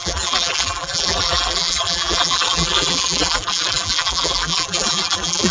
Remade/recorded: remade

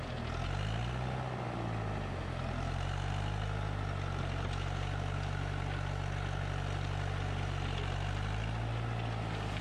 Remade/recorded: recorded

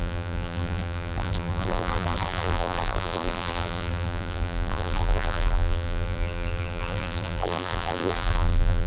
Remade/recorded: remade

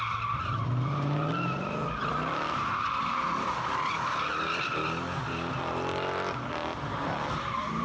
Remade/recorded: remade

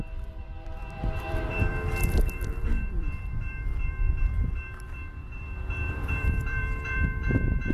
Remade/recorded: remade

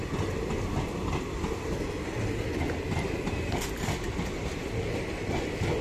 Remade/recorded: recorded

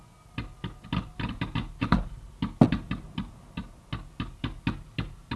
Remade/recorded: recorded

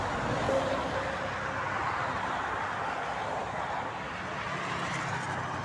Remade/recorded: recorded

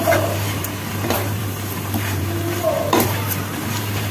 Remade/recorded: remade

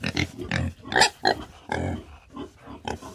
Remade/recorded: recorded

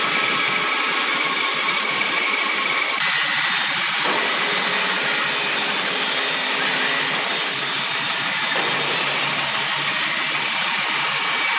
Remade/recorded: recorded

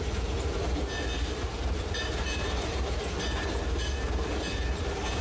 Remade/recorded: recorded